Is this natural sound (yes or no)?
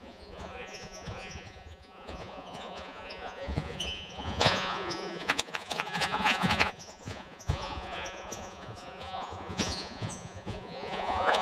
no